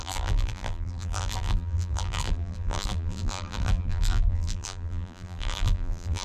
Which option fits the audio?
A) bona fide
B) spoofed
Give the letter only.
B